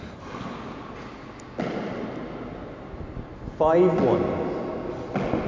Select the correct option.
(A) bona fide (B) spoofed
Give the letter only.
A